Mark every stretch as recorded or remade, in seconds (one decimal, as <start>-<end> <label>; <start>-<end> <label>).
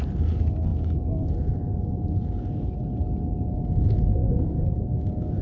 0.0-5.4 recorded